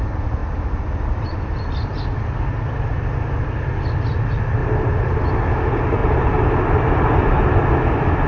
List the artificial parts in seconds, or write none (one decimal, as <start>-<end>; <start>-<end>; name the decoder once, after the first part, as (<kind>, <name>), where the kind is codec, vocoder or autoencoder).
4.6-5.2 (vocoder, BigVGAN v2); 6.0-6.6